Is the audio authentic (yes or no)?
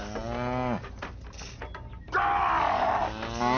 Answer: yes